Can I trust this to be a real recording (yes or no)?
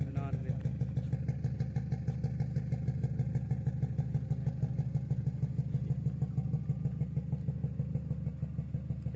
yes